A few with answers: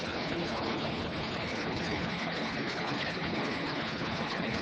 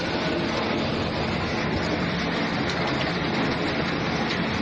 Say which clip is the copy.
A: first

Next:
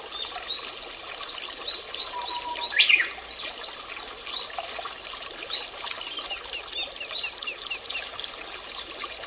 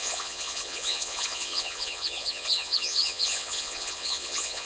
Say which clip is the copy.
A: second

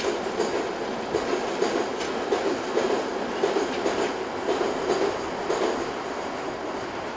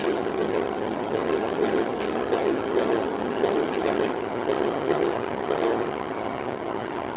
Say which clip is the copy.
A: second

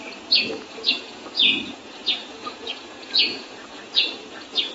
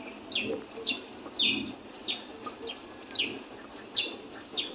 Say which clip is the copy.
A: first